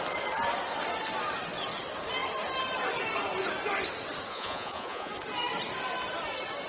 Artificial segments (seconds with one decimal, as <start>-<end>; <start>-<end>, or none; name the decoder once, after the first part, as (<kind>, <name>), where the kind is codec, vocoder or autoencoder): 4.3-5.1 (vocoder, Vocos)